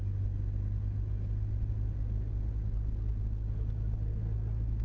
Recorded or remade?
recorded